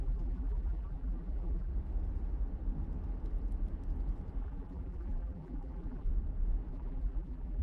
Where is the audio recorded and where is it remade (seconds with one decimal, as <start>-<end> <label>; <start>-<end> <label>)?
0.0-1.7 remade; 1.7-4.4 recorded; 4.4-6.1 remade; 6.1-6.7 recorded; 6.7-7.6 remade